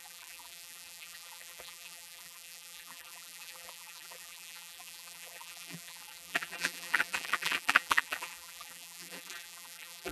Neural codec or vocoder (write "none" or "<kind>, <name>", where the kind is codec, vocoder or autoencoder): vocoder, BigVGAN v2